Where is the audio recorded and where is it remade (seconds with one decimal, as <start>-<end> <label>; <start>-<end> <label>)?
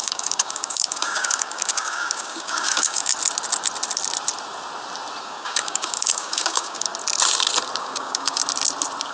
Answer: 0.0-3.1 remade; 3.1-5.2 recorded; 5.2-6.9 remade; 6.9-7.8 recorded; 7.8-8.4 remade; 8.4-9.1 recorded